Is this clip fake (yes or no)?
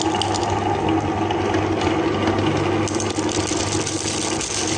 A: no